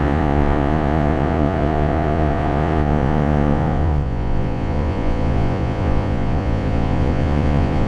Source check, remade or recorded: remade